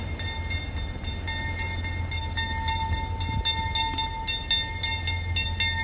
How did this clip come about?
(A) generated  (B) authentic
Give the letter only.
B